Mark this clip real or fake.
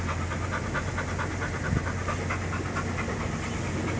real